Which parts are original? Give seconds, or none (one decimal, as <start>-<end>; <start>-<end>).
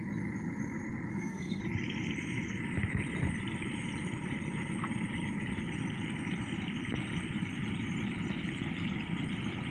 0.0-1.1; 1.6-9.7